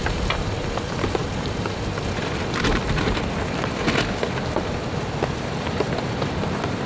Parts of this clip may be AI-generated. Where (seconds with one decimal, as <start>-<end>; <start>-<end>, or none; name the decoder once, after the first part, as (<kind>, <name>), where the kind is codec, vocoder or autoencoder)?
none